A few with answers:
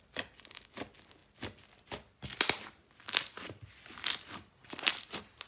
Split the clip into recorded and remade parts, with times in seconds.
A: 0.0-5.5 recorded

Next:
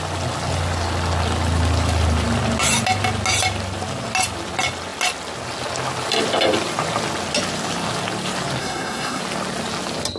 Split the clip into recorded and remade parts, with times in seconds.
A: 0.0-8.6 recorded; 8.6-9.2 remade; 9.2-10.2 recorded

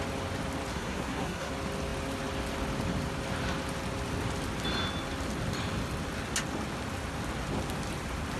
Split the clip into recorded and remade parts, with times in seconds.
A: 0.0-0.7 recorded; 0.7-1.5 remade; 1.5-8.4 recorded

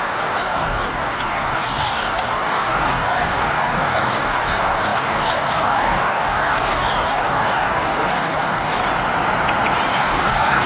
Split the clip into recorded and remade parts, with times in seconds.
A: 0.0-8.8 remade; 8.8-9.9 recorded; 9.9-10.7 remade

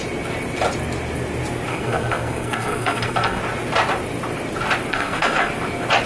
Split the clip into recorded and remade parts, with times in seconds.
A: 0.0-1.7 recorded; 1.7-3.4 remade; 3.4-4.9 recorded; 4.9-5.5 remade; 5.5-6.1 recorded

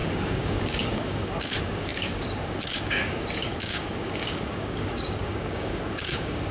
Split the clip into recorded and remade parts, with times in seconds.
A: 0.0-6.5 remade

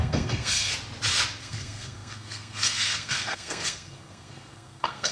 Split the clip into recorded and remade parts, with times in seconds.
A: 0.0-0.7 remade; 0.7-1.4 recorded; 1.4-5.1 remade